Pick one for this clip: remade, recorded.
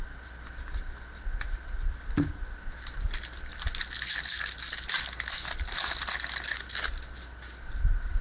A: recorded